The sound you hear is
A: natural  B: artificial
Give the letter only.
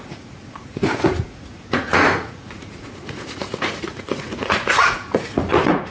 B